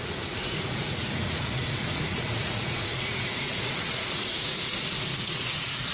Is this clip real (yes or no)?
no